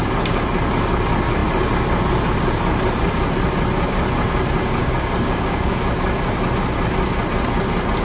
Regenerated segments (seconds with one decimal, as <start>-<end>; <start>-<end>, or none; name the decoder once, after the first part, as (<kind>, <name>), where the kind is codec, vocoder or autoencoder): 4.8-5.8 (codec, DAC)